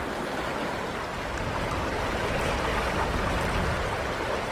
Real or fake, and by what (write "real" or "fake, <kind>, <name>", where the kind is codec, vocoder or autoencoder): real